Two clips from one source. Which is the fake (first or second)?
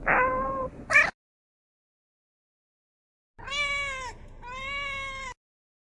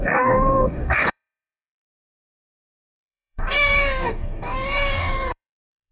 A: second